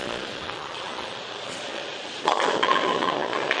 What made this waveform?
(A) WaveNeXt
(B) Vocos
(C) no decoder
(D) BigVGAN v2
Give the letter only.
B